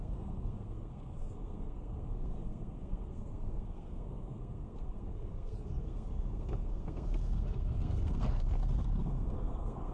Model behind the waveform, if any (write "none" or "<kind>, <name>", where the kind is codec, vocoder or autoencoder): codec, SNAC